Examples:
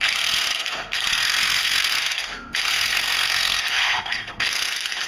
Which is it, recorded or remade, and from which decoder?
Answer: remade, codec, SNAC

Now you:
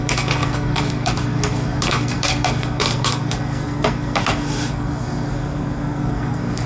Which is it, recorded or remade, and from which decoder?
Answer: remade, codec, SNAC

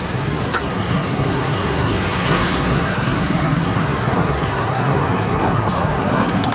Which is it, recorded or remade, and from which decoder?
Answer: remade, codec, SNAC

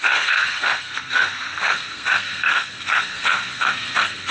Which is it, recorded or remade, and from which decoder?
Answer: remade, codec, SNAC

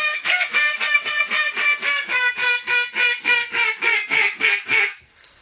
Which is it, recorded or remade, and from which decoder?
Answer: remade, codec, SNAC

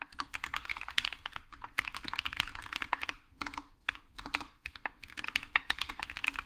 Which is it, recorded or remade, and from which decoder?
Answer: remade, codec, SNAC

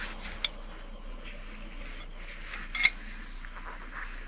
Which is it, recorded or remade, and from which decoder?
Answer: recorded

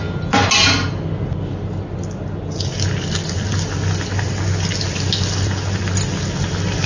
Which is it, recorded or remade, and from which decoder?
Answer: recorded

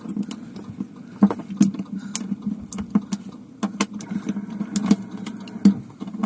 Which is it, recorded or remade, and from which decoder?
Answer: recorded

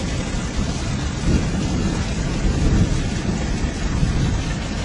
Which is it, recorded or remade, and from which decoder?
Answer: recorded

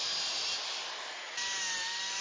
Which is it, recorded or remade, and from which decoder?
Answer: recorded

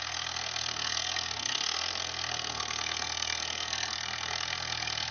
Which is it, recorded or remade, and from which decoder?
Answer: remade, codec, SNAC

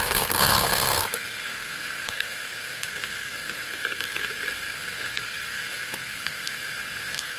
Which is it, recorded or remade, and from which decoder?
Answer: remade, codec, SNAC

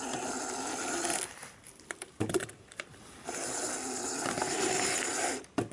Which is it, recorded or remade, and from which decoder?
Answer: recorded